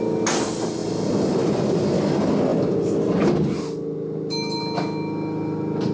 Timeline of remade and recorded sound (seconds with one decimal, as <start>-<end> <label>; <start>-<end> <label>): 0.0-5.9 recorded